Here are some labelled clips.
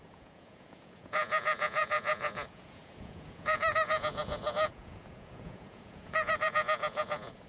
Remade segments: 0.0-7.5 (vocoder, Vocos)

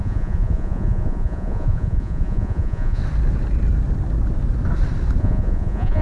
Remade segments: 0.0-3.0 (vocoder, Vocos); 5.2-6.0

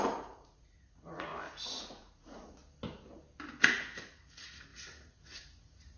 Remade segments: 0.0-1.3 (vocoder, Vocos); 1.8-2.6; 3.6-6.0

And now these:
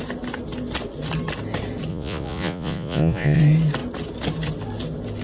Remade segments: 1.9-3.4 (vocoder, Vocos)

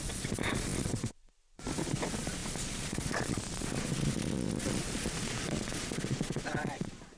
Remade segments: 0.0-7.2 (vocoder, Vocos)